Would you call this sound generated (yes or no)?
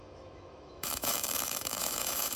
yes